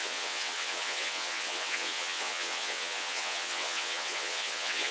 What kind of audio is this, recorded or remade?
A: remade